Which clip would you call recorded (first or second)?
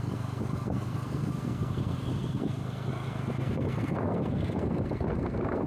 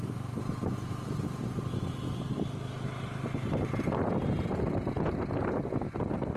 second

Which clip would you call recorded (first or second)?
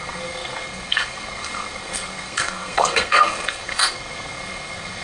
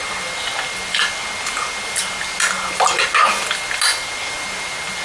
second